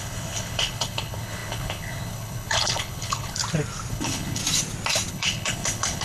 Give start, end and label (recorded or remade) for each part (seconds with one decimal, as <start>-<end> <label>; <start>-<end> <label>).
0.0-3.4 remade; 3.4-3.9 recorded; 3.9-4.4 remade; 4.4-5.1 recorded; 5.1-6.0 remade